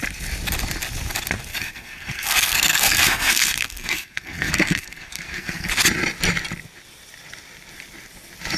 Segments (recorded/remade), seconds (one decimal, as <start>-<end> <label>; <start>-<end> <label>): 0.0-1.5 recorded; 1.5-5.7 remade; 5.7-8.6 recorded